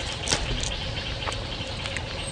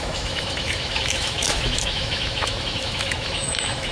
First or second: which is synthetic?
second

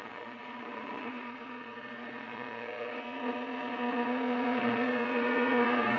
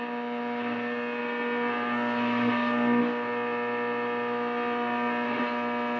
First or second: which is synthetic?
first